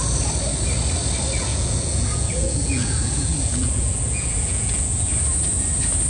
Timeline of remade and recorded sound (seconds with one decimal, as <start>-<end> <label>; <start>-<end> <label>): 0.0-1.4 recorded; 1.4-5.1 remade; 5.1-6.1 recorded